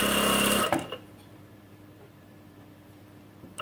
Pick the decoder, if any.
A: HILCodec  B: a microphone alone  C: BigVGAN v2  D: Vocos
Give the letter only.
C